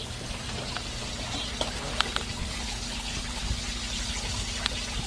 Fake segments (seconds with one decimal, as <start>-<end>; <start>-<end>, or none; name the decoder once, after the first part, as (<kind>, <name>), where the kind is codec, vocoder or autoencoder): 2.4-3.4 (codec, HILCodec)